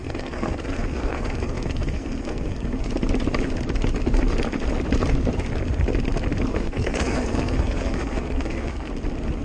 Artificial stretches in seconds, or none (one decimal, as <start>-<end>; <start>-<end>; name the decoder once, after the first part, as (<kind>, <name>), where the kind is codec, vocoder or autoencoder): 0.0-2.9 (codec, SNAC); 6.5-8.9